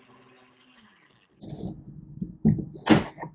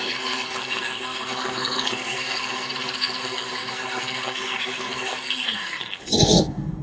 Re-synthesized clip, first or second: second